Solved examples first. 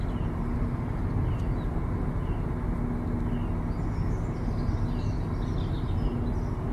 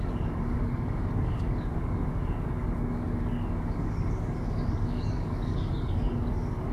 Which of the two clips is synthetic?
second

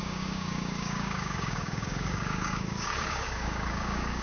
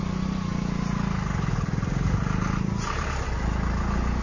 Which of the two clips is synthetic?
first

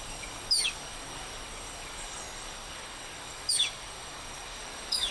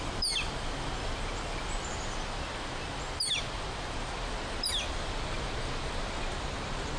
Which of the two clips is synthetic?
first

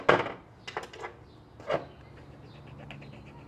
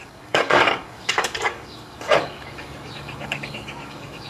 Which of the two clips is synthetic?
second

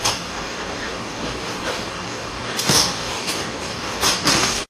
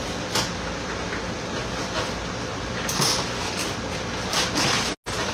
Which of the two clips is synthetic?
first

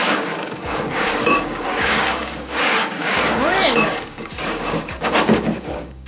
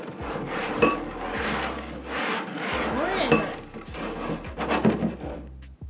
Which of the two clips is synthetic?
first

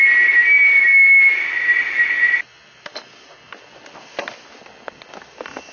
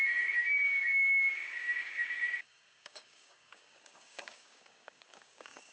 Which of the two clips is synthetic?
second